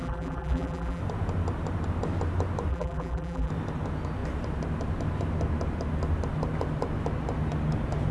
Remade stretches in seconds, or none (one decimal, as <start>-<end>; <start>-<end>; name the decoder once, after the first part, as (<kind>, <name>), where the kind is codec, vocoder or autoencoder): 0.0-1.0 (vocoder, BigVGAN v2); 2.7-3.5

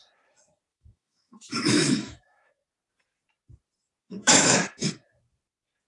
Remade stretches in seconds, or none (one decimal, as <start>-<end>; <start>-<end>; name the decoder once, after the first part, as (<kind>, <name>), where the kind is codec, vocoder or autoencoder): 0.7-2.5 (autoencoder, DAC-VAE); 4.0-4.9

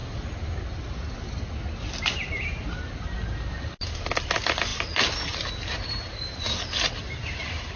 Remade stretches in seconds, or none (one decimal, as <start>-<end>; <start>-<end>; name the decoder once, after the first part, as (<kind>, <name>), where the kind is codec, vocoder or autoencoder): none

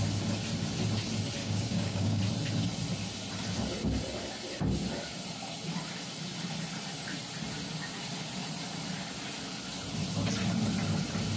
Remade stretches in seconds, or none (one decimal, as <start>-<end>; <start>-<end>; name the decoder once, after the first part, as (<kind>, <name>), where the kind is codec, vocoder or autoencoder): 1.4-2.2 (codec, DAC)

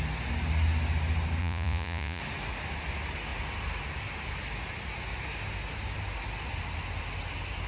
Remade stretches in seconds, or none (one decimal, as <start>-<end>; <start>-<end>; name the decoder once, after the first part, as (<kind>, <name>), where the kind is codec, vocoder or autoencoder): 1.4-2.2 (vocoder, Vocos)

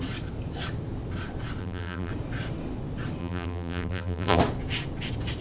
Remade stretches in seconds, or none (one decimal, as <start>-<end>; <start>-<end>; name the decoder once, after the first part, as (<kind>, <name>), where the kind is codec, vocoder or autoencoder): 1.6-2.1 (vocoder, BigVGAN v2); 3.2-4.4

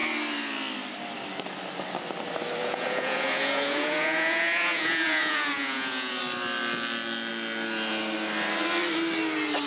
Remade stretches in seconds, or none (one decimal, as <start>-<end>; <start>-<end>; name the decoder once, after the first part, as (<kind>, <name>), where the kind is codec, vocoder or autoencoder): 2.6-6.2 (vocoder, Vocos)

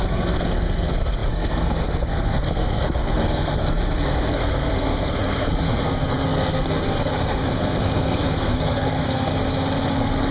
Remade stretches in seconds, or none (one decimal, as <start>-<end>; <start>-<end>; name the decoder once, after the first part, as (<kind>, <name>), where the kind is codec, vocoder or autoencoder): 0.0-9.3 (codec, SNAC); 9.9-10.3